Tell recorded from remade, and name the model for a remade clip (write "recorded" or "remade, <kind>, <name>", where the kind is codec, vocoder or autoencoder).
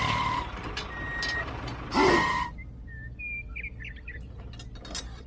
recorded